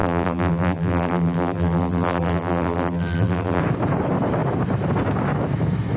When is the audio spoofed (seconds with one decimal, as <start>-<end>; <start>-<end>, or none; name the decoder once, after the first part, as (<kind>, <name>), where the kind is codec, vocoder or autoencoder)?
0.0-3.6 (vocoder, BigVGAN v2)